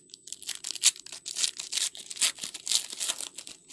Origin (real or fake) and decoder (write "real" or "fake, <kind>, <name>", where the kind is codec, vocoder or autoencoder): real